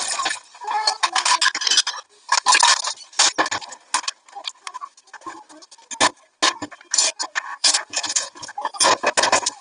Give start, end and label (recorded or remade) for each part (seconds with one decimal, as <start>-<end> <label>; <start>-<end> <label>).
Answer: 0.0-7.5 recorded; 7.5-8.9 remade; 8.9-9.6 recorded